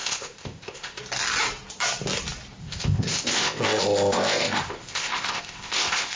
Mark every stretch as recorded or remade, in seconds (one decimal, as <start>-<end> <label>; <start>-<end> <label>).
0.0-1.0 remade; 1.0-2.6 recorded; 2.6-6.2 remade